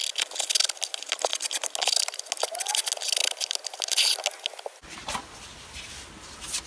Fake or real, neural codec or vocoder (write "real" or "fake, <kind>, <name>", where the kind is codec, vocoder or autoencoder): real